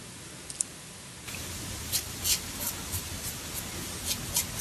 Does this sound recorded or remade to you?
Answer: recorded